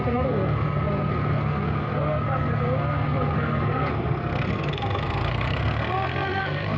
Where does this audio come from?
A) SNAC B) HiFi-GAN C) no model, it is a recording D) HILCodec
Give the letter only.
A